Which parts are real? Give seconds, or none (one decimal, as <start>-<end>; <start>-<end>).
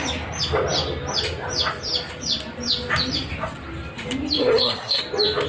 0.0-4.4; 5.0-5.5